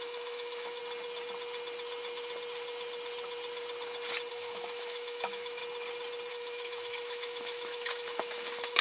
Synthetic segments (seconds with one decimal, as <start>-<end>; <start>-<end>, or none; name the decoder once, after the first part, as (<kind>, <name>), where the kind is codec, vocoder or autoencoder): 0.0-0.8 (autoencoder, DAC-VAE); 4.3-5.6; 6.3-8.8

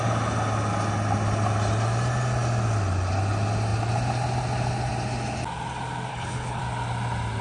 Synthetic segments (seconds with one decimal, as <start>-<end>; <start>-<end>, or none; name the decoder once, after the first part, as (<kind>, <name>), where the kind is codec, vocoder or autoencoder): 6.1-6.6 (codec, HILCodec)